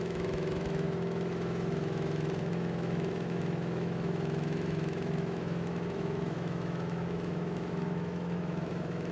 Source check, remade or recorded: remade